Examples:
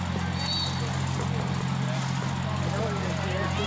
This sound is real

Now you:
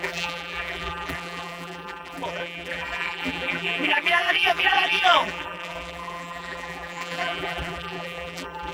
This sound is fake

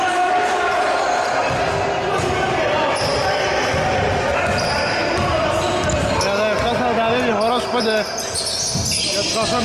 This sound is real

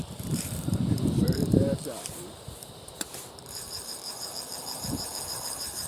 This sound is fake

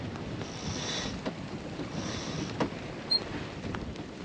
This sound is fake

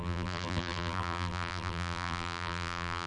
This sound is fake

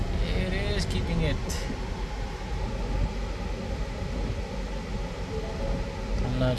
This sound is real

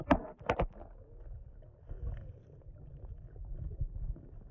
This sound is real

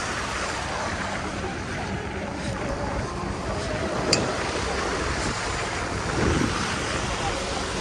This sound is fake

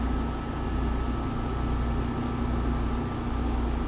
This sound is real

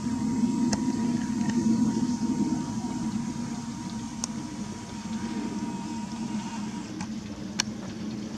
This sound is real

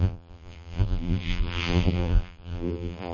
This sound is fake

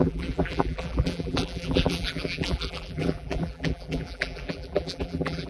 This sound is fake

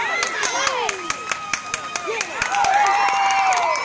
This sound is real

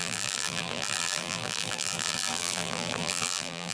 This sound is fake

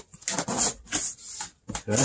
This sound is real